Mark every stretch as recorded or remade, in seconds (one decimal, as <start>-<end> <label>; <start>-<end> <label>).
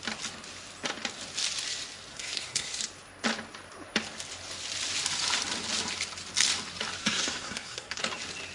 0.0-2.1 recorded; 2.1-2.8 remade; 2.8-7.0 recorded; 7.0-8.0 remade; 8.0-8.5 recorded